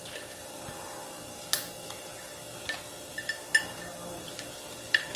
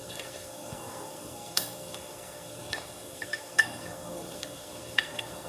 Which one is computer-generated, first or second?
second